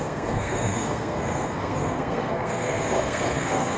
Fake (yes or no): yes